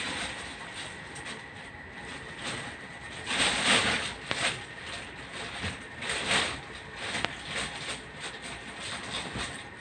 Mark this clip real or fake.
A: real